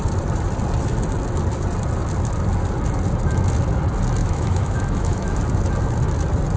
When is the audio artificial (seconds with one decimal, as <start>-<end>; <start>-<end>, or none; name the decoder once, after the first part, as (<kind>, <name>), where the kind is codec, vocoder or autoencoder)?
4.2-5.4 (autoencoder, DAC-VAE)